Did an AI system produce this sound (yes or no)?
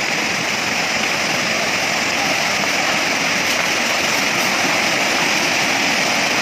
no